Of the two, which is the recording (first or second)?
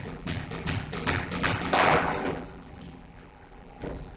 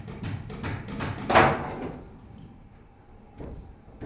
second